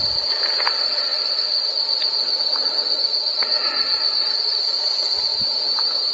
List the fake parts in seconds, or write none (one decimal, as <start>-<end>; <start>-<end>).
5.3-6.1